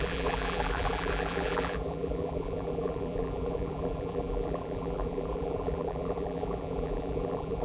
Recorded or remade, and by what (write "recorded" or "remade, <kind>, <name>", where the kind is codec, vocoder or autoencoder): remade, vocoder, BigVGAN v2